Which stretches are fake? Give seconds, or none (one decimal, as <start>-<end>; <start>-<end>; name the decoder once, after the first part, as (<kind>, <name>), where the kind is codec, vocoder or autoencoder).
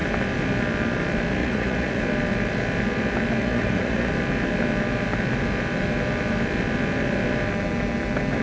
1.4-2.0 (vocoder, Vocos); 3.4-4.1